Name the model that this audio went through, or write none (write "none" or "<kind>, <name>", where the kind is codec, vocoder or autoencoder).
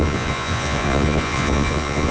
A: vocoder, Vocos